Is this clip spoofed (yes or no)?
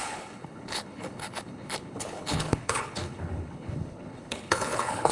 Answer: yes